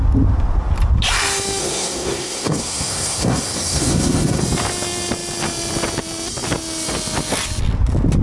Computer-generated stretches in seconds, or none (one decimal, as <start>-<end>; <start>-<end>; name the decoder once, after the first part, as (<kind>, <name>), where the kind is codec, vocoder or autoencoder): 1.6-4.4 (codec, SNAC)